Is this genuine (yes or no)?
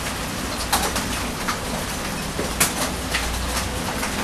yes